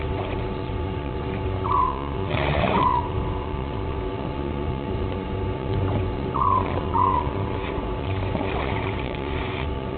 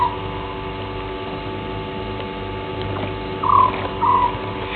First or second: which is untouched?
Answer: second